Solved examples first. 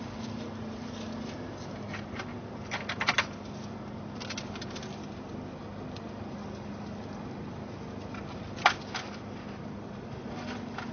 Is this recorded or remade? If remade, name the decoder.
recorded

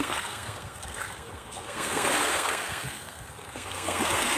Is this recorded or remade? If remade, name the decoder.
remade, codec, SNAC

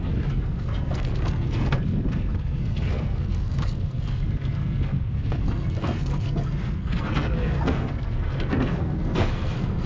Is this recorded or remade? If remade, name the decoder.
remade, codec, SNAC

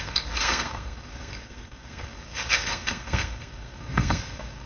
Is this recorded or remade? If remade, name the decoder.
remade, codec, SNAC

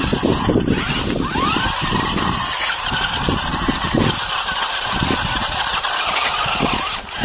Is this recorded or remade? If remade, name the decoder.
recorded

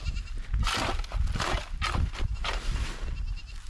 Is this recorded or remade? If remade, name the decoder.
recorded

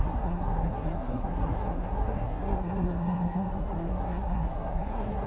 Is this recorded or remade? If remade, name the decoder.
remade, codec, SNAC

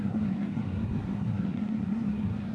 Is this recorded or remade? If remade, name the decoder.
remade, codec, SNAC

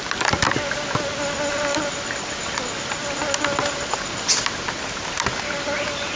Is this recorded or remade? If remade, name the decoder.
recorded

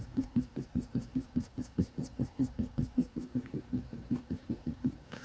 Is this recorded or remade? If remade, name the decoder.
remade, codec, SNAC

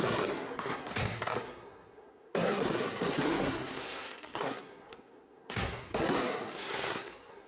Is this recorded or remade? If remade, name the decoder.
remade, codec, SNAC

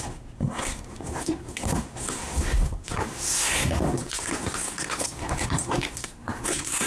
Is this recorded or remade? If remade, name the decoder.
remade, codec, SNAC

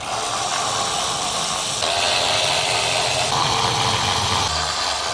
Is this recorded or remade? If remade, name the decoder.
recorded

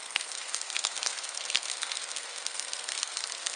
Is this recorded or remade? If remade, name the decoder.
remade, codec, SNAC